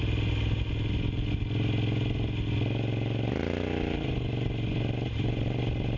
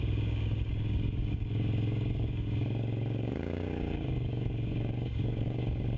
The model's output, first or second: second